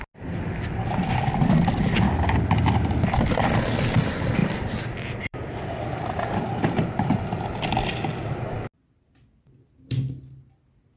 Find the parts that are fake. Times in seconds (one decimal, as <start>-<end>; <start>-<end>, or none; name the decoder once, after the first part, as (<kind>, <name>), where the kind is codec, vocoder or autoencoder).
4.4-7.4 (vocoder, BigVGAN v2)